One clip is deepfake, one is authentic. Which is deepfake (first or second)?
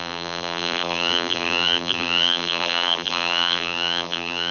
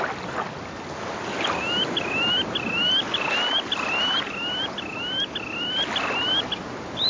first